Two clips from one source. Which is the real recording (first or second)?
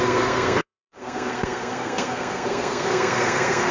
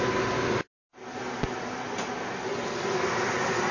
second